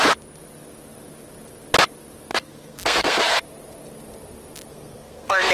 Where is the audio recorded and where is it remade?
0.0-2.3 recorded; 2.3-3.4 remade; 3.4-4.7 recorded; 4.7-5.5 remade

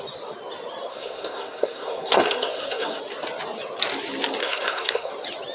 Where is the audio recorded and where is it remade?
0.0-0.9 recorded; 0.9-3.0 remade; 3.0-4.4 recorded; 4.4-5.1 remade; 5.1-5.5 recorded